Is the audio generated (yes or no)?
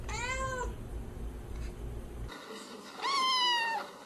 no